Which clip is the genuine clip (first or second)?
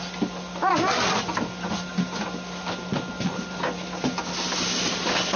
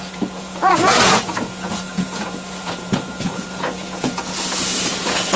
first